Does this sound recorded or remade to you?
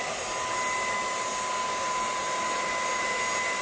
recorded